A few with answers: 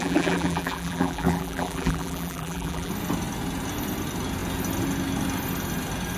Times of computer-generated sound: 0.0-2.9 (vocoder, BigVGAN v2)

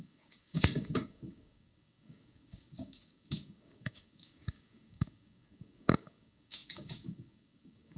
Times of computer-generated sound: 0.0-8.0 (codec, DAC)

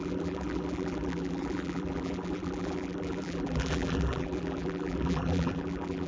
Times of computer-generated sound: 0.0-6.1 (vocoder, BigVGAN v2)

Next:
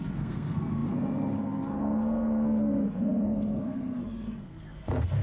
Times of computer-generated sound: 0.0-5.2 (codec, SNAC)

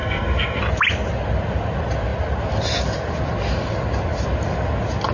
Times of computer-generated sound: 0.0-0.6 (codec, SNAC)